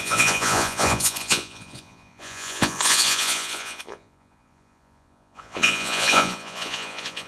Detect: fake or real fake